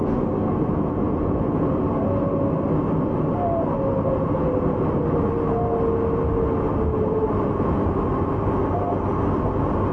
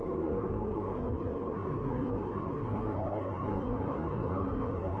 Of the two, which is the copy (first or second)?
second